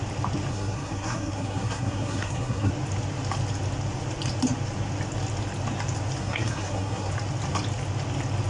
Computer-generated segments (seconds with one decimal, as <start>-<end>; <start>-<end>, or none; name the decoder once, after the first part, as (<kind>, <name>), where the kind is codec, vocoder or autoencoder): 0.5-2.7 (codec, SNAC); 6.2-7.1